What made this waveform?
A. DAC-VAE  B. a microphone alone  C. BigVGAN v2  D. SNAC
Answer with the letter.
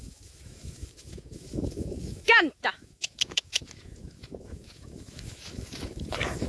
A